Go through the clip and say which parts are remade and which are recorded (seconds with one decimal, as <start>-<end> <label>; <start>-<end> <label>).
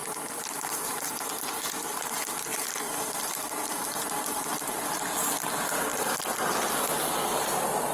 0.0-2.5 recorded; 2.5-4.9 remade; 4.9-7.9 recorded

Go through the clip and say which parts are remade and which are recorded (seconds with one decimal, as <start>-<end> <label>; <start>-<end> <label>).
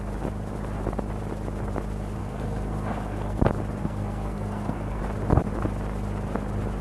0.0-2.2 recorded; 2.2-3.4 remade; 3.4-3.8 recorded; 3.8-5.0 remade; 5.0-6.8 recorded